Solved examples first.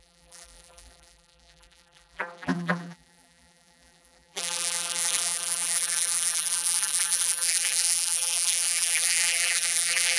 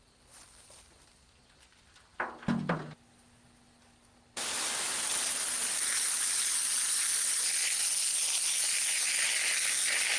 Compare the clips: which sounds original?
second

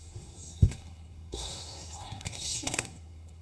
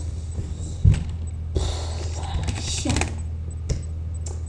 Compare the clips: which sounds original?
second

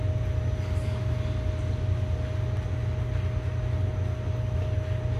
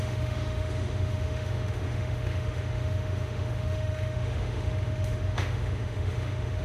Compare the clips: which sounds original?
first